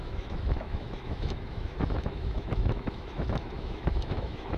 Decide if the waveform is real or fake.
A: fake